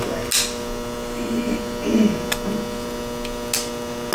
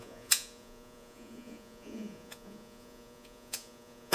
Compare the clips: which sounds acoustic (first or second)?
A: first